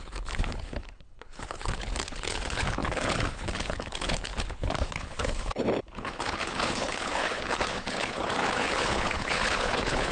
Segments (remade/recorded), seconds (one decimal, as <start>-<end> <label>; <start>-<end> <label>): 0.0-10.1 remade